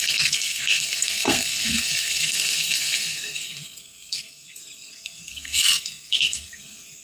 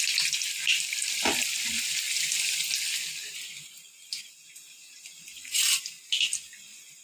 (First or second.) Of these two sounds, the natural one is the second